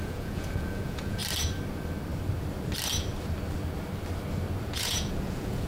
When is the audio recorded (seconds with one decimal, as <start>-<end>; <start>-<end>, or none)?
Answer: 1.2-4.6